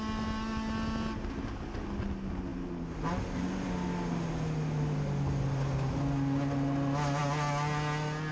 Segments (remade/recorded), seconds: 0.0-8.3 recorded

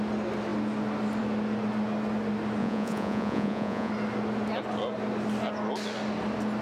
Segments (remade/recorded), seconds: 0.0-2.6 recorded; 2.6-3.9 remade; 3.9-6.6 recorded

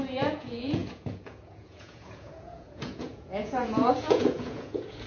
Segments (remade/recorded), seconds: 0.0-5.1 remade

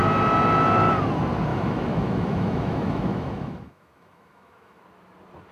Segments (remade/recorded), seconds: 0.0-1.5 recorded; 1.5-4.8 remade; 4.8-5.5 recorded

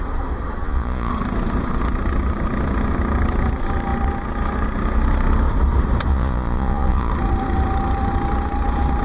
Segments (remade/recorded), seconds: 0.0-0.6 recorded; 0.6-1.1 remade; 1.1-6.1 recorded; 6.1-7.1 remade; 7.1-9.0 recorded

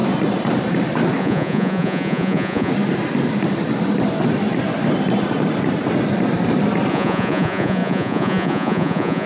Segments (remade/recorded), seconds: 0.0-1.2 recorded; 1.2-2.7 remade; 2.7-6.9 recorded; 6.9-9.3 remade